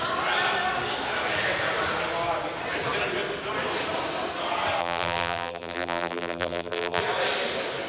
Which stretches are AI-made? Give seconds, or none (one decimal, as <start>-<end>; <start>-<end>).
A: 4.8-7.0